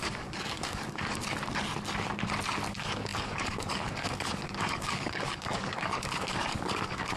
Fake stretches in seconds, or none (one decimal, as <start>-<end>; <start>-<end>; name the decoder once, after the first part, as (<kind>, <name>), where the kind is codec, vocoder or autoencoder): 0.0-1.2 (codec, DAC); 2.7-7.2